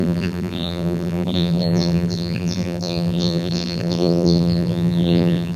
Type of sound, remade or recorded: remade